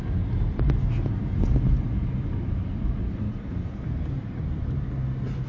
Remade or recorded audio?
recorded